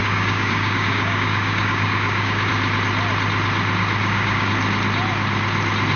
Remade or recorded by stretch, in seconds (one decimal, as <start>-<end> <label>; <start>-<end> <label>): 0.0-2.5 remade; 2.5-4.0 recorded; 4.0-4.5 remade; 4.5-6.0 recorded